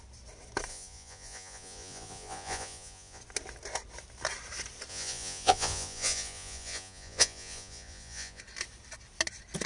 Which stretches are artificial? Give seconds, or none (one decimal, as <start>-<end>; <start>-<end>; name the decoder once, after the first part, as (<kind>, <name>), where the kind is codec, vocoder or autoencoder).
0.7-3.2 (vocoder, Vocos); 4.9-8.4